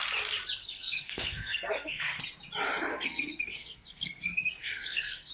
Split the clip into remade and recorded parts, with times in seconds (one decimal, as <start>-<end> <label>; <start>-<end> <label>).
0.0-0.6 recorded; 0.6-2.2 remade; 2.2-2.9 recorded; 2.9-5.3 remade